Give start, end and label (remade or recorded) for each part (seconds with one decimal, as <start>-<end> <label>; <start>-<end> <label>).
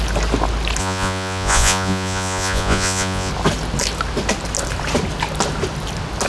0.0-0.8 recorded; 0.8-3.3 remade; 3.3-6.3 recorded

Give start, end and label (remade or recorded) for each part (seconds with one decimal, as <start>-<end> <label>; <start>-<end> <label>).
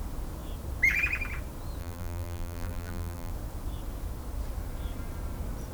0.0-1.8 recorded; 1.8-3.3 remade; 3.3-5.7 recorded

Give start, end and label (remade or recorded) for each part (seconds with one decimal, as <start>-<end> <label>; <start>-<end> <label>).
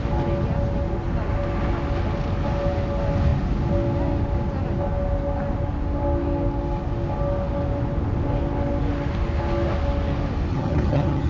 0.0-10.5 recorded; 10.5-11.3 remade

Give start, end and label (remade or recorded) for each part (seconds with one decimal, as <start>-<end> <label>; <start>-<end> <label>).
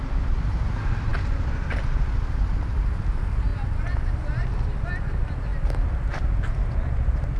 0.0-7.4 recorded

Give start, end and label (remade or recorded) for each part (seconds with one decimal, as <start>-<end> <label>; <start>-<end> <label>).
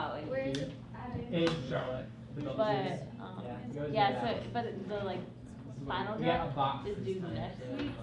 0.0-1.4 recorded; 1.4-2.2 remade; 2.2-8.0 recorded